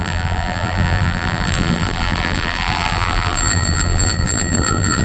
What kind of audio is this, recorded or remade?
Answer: remade